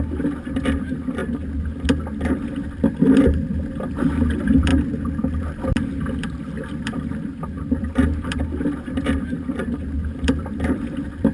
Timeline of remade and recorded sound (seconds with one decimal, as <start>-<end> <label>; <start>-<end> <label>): 0.0-1.2 remade; 1.2-2.5 recorded; 2.5-4.7 remade; 4.7-5.4 recorded; 5.4-11.3 remade